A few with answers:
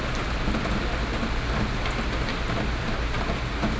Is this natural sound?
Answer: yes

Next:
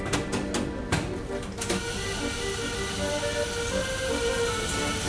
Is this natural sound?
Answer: yes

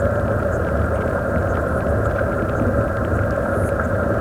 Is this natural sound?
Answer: yes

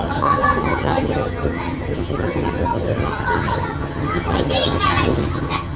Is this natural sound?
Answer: no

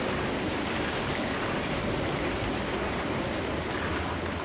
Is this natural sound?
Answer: yes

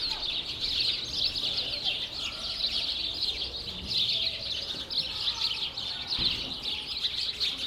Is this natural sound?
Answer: yes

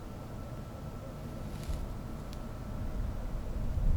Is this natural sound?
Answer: yes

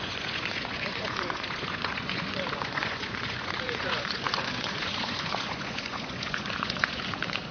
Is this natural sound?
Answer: no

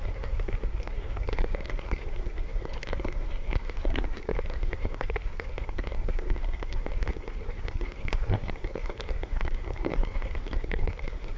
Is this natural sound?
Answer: no